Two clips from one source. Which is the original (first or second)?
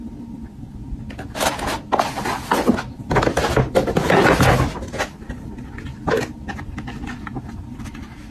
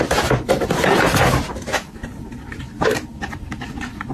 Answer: first